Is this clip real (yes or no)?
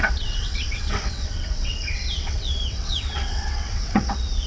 no